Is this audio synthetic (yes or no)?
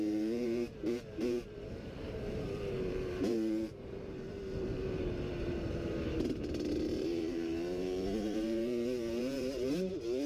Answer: yes